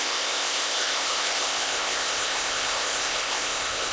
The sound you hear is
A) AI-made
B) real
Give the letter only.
A